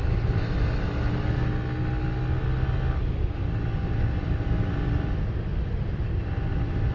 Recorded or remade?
recorded